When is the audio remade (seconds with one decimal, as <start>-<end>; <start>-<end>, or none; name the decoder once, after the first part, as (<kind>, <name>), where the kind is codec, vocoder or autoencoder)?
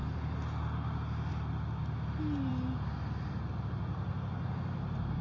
none